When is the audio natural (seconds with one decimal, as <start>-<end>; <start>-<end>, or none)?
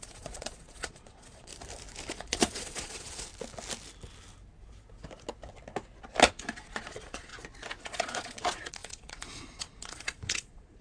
1.5-2.1; 3.3-6.3; 7.3-7.8